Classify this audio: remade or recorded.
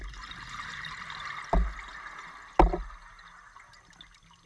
recorded